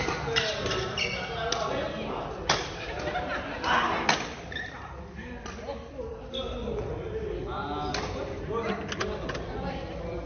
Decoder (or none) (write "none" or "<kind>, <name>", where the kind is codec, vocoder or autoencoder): none